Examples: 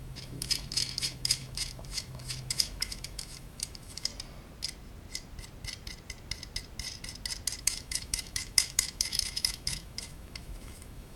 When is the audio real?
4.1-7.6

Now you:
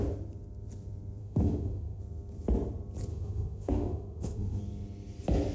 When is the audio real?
0.0-1.2; 2.0-3.1; 4.6-5.5

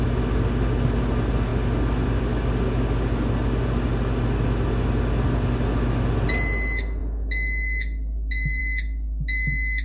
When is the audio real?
0.0-9.8

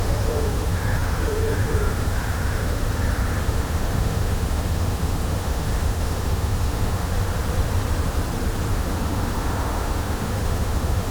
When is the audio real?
2.8-3.4; 7.1-8.7

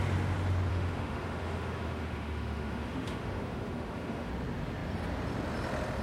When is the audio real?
0.0-0.7; 4.3-6.0